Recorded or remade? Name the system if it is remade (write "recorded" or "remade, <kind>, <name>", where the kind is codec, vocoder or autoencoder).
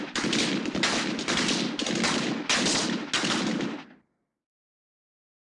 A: recorded